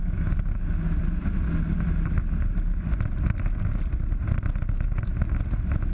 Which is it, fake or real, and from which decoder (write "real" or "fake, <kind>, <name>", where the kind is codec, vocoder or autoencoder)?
real